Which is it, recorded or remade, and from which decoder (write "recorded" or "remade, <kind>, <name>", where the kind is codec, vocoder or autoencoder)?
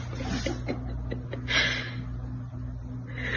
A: recorded